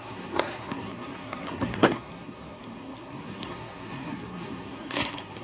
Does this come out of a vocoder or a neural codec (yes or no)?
yes